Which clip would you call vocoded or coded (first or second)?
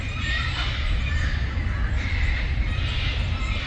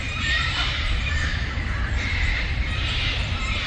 second